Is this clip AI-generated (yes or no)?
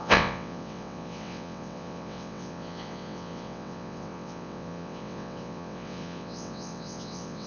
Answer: yes